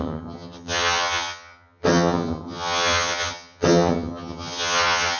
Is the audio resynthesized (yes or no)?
yes